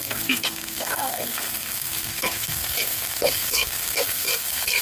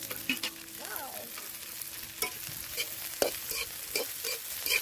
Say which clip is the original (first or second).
second